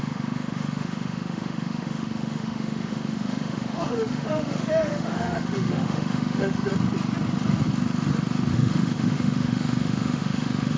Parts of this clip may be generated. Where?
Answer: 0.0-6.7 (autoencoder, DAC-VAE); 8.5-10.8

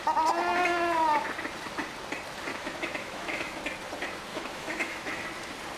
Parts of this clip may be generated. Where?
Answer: 2.5-3.6 (autoencoder, DAC-VAE); 4.3-5.2

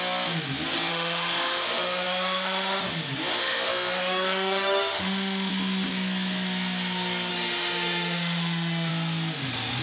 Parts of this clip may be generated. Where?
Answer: 0.9-2.8 (autoencoder, DAC-VAE); 3.3-5.5; 7.3-8.9

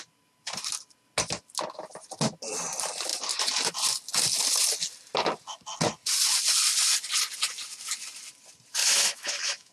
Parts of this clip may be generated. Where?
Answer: 8.8-9.7 (autoencoder, DAC-VAE)

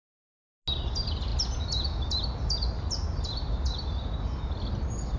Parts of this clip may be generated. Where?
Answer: none

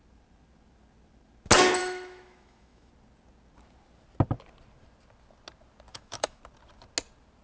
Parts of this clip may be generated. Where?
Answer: 1.8-2.9 (autoencoder, DAC-VAE); 5.9-6.4

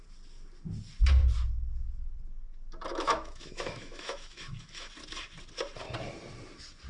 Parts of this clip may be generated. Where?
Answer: 2.9-4.9 (autoencoder, DAC-VAE)